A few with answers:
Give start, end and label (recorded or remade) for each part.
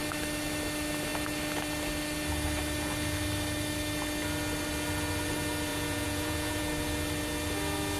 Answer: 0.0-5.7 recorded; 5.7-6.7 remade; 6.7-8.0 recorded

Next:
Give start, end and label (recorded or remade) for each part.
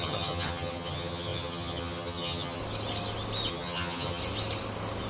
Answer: 0.0-2.6 remade; 2.6-3.5 recorded; 3.5-4.2 remade; 4.2-5.1 recorded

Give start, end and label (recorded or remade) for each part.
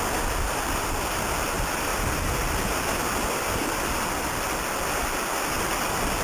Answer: 0.0-6.2 recorded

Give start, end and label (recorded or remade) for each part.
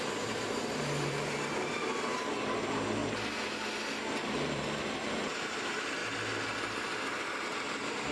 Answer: 0.0-3.0 remade; 3.0-4.3 recorded; 4.3-6.0 remade; 6.0-7.4 recorded; 7.4-8.1 remade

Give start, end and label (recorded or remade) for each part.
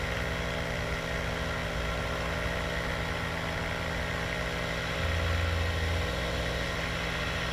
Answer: 0.0-7.5 recorded